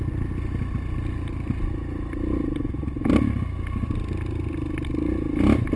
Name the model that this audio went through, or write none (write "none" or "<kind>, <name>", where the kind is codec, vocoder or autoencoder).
none